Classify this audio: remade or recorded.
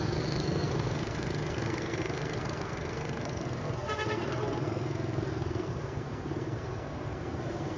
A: remade